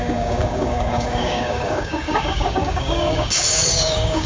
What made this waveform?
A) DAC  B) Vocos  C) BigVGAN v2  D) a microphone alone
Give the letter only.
A